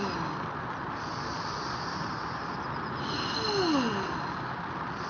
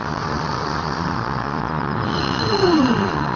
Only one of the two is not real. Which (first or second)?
second